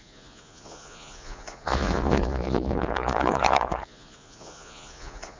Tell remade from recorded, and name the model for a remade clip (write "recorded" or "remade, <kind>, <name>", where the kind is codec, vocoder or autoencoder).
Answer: remade, vocoder, Vocos